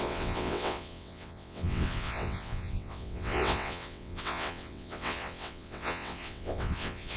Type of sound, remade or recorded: remade